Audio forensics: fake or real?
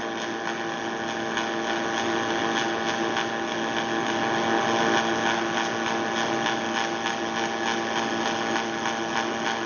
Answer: real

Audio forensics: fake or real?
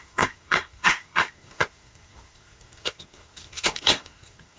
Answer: fake